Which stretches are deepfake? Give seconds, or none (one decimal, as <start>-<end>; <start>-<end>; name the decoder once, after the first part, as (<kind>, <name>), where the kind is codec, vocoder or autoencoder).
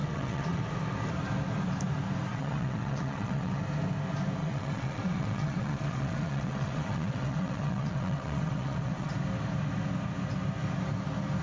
0.0-0.6 (vocoder, WaveNeXt); 2.3-3.6; 4.4-9.1